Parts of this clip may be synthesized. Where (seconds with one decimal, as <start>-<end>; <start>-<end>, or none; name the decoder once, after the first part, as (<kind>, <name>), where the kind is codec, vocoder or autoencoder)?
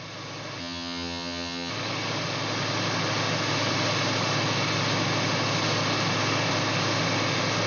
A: 0.6-1.7 (vocoder, HiFi-GAN)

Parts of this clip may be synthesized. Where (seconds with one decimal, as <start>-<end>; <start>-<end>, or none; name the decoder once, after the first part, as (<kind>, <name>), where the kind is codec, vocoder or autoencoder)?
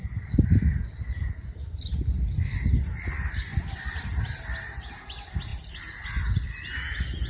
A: none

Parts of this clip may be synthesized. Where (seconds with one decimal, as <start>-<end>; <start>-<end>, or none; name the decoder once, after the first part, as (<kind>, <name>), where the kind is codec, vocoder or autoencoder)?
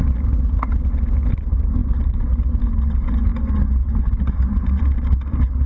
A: none